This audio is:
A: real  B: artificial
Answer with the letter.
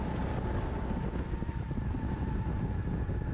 A